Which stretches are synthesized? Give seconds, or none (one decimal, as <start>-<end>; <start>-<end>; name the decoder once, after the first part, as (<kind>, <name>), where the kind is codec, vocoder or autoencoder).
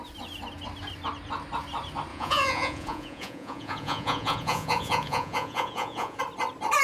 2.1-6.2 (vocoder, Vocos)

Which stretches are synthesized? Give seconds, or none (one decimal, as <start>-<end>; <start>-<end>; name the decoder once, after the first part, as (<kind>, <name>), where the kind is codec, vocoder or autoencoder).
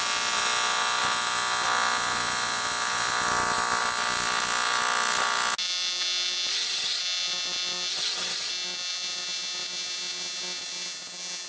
6.5-7.0 (codec, HILCodec); 7.9-8.5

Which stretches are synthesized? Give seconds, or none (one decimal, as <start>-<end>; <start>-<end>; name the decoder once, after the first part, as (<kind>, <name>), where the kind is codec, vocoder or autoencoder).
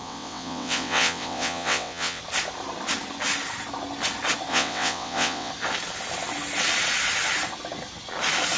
0.0-2.2 (vocoder, WaveNeXt); 4.5-5.5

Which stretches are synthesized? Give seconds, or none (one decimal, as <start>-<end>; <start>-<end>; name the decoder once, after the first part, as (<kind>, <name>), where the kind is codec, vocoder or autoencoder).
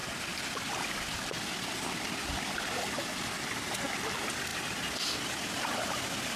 none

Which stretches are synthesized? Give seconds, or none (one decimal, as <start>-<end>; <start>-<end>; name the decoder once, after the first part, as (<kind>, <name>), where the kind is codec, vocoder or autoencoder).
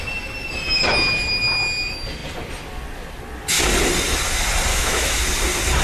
4.7-5.2 (autoencoder, DAC-VAE)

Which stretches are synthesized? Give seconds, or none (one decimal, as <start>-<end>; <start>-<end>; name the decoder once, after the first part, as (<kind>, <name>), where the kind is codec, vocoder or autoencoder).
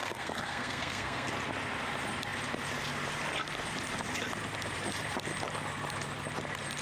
0.0-1.3 (codec, SNAC)